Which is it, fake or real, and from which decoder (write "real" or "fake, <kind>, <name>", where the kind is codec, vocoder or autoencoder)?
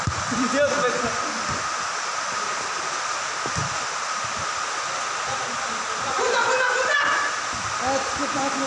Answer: real